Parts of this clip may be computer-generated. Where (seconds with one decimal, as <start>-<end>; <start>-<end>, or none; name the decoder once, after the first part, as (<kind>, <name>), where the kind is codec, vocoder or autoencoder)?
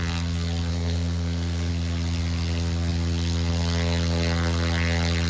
0.7-1.7 (codec, SNAC)